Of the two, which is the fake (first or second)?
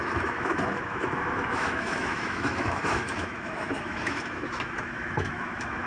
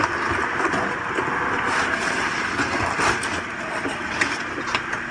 first